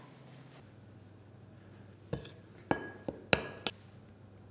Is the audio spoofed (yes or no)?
no